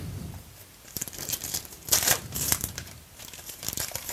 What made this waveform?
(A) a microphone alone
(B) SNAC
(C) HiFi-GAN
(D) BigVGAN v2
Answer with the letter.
D